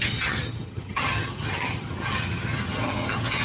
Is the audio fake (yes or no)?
yes